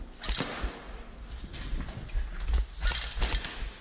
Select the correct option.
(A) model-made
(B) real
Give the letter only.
B